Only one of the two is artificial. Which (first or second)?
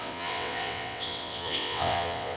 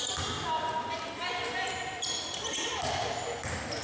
first